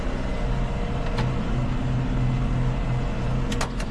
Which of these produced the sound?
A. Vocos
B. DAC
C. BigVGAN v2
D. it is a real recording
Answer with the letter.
D